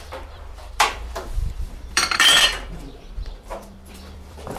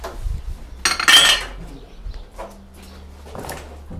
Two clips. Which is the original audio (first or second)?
second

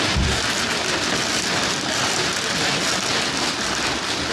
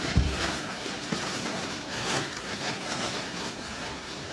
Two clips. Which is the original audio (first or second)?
first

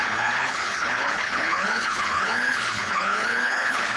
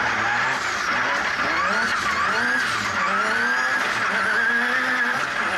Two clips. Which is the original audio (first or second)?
second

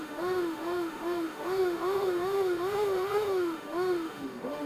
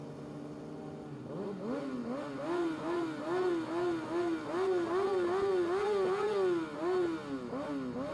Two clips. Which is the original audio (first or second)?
second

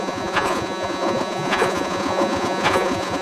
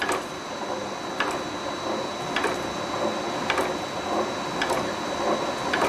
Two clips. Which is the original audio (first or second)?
second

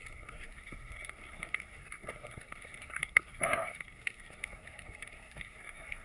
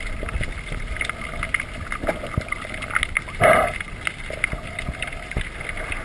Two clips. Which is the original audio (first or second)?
second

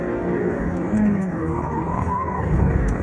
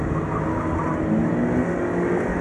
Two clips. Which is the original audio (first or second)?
second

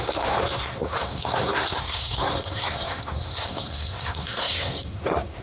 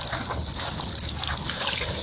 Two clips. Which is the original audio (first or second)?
second